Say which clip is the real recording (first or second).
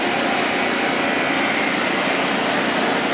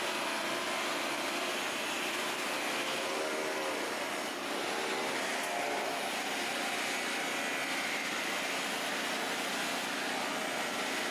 second